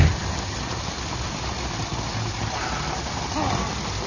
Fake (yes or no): no